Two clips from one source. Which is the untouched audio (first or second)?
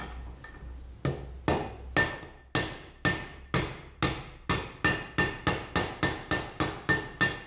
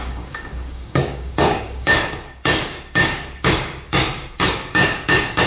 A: first